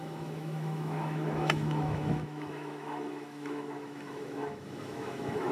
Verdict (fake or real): fake